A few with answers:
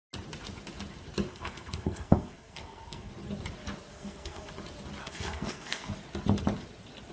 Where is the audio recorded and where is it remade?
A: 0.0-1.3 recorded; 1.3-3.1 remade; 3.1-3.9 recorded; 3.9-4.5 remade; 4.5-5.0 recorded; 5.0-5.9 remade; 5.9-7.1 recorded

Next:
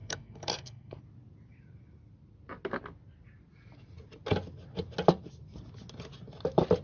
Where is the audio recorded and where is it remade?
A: 0.0-1.0 remade; 1.0-6.8 recorded

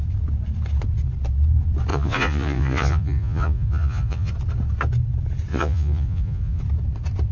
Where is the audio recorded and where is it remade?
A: 0.0-1.9 recorded; 1.9-4.3 remade; 4.3-5.5 recorded; 5.5-6.6 remade; 6.6-7.3 recorded

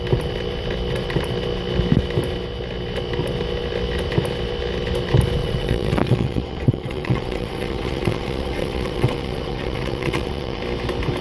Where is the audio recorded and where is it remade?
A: 0.0-5.4 recorded; 5.4-10.6 remade; 10.6-11.2 recorded

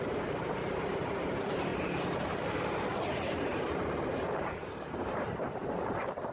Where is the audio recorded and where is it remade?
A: 0.0-1.7 remade; 1.7-3.1 recorded; 3.1-3.5 remade; 3.5-4.1 recorded; 4.1-6.3 remade

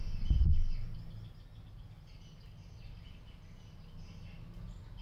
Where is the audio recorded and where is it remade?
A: 0.0-5.0 recorded

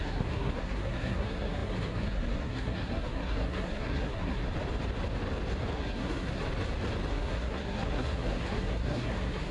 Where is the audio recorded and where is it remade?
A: 0.0-4.4 remade; 4.4-5.7 recorded; 5.7-6.4 remade; 6.4-7.1 recorded; 7.1-9.5 remade